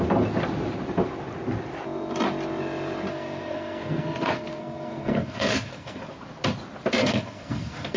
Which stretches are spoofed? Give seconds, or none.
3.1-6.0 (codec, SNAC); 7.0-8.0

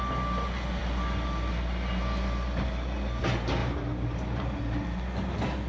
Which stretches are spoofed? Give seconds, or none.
3.6-5.0 (vocoder, BigVGAN v2)

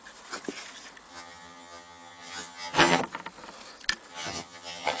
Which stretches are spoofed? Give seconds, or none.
1.1-3.0 (vocoder, HiFi-GAN); 4.1-5.0

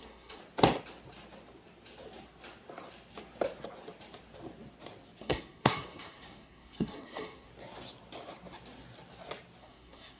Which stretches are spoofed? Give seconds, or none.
0.0-0.4 (codec, SNAC); 5.2-7.5; 9.6-10.2

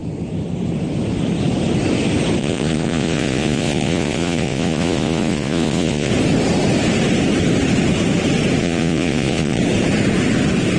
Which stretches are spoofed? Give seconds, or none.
2.4-6.1 (vocoder, Vocos); 8.6-9.6

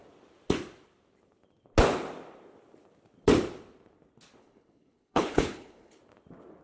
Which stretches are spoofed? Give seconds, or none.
4.4-6.0 (codec, HILCodec)

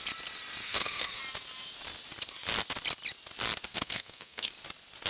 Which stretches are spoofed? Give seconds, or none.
0.6-1.2 (codec, SNAC); 3.7-4.5